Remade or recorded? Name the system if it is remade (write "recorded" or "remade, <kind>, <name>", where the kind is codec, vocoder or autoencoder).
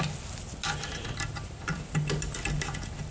recorded